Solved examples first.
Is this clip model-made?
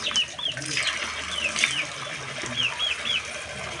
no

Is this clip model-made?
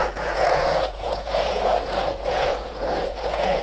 yes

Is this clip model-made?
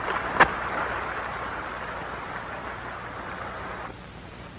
no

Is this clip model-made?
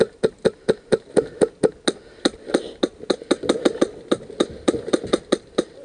no